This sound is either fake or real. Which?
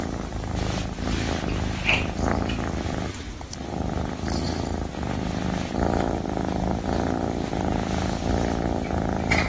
real